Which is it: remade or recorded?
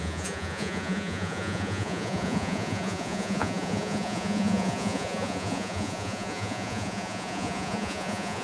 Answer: remade